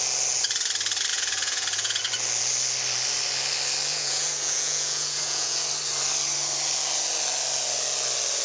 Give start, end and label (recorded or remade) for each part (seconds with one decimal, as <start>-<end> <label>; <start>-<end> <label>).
0.0-1.1 recorded; 1.1-2.0 remade; 2.0-3.9 recorded; 3.9-5.6 remade; 5.6-8.4 recorded